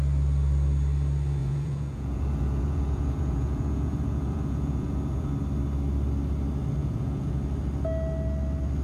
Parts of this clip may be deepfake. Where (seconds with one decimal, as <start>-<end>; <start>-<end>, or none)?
1.4-5.3; 6.8-7.3